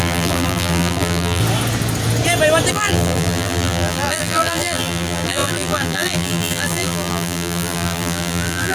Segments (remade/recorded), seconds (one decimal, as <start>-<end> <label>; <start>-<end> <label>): 0.0-1.4 remade; 1.4-2.7 recorded; 2.7-8.7 remade

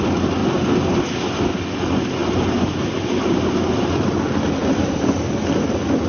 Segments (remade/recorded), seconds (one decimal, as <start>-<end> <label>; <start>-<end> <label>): 0.0-6.1 recorded

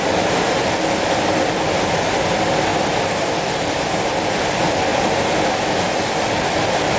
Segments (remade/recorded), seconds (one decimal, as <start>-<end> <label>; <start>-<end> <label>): 0.0-7.0 recorded

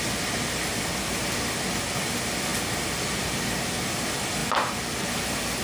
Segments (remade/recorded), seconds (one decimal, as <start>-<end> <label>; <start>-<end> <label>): 0.0-5.6 recorded